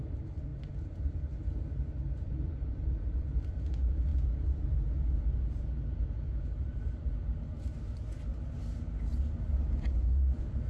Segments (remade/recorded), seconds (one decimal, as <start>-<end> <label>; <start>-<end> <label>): 0.0-10.7 recorded